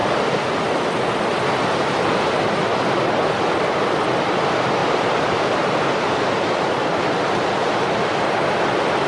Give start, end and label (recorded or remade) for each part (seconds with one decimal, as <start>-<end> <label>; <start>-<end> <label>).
0.0-9.1 recorded